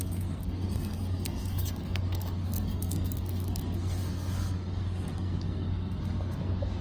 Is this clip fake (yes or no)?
yes